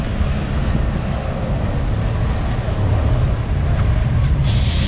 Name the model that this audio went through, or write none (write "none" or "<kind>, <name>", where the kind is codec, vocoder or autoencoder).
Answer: none